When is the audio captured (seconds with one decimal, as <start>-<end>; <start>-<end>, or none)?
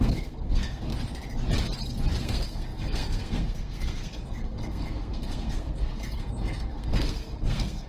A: 0.9-2.2